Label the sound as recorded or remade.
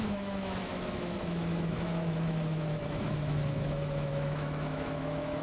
remade